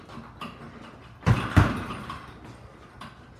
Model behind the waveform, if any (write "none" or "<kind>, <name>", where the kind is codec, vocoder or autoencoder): none